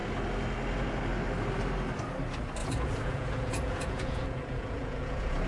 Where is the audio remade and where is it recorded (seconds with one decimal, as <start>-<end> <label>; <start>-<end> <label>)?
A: 0.0-2.6 recorded; 2.6-5.5 remade